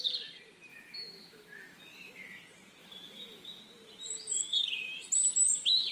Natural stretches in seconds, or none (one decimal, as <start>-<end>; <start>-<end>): 0.0-0.7; 2.4-2.8; 3.6-5.9